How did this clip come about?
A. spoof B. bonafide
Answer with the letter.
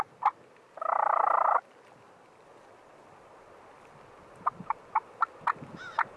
B